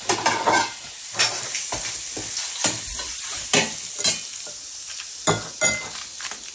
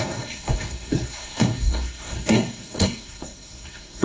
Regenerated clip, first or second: second